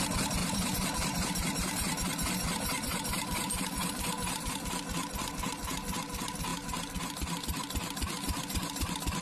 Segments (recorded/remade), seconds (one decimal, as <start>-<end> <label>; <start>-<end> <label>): 0.0-0.4 recorded; 0.4-4.5 remade; 4.5-9.2 recorded